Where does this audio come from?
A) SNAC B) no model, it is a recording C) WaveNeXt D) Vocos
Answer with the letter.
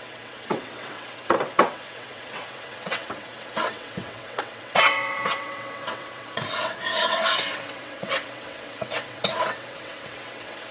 C